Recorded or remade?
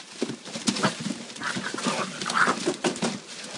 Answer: recorded